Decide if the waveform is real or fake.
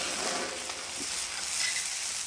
real